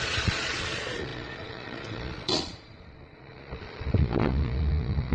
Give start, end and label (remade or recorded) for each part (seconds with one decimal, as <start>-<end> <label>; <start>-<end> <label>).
0.0-5.1 remade